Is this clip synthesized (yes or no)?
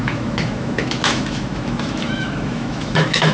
yes